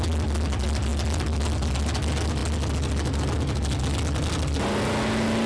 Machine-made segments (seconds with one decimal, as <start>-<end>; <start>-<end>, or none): none